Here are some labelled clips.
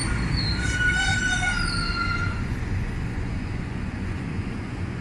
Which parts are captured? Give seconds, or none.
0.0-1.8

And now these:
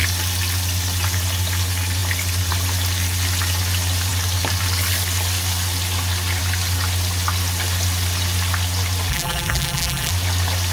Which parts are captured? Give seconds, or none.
0.0-9.1; 10.1-10.7